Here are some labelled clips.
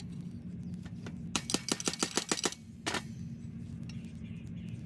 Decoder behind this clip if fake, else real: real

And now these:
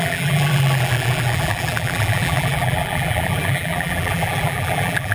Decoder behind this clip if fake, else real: fake, vocoder, BigVGAN v2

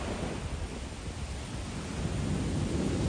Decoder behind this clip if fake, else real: real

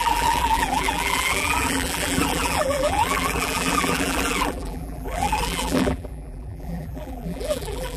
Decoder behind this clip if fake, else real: fake, vocoder, BigVGAN v2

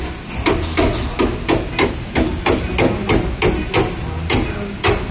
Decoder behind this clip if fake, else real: real